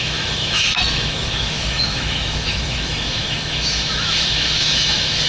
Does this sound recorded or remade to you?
remade